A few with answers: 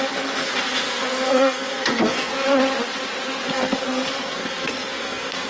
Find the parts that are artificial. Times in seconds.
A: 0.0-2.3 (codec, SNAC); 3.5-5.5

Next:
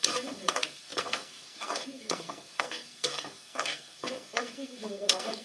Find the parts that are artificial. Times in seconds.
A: 0.0-5.4 (codec, SNAC)

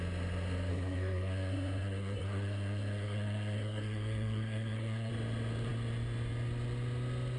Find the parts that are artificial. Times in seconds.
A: 0.7-5.1 (codec, SNAC)

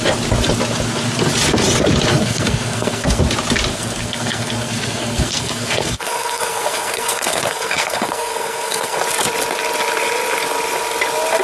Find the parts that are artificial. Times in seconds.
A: 2.1-3.2 (codec, SNAC); 3.7-9.0

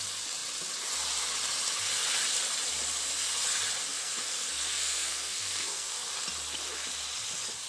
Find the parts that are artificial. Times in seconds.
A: 3.9-6.1 (codec, SNAC)

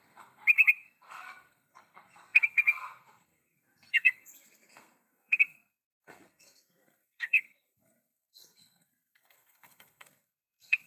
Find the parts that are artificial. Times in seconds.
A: 0.0-10.9 (codec, SNAC)